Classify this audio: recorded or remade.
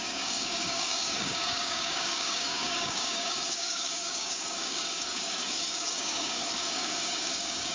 remade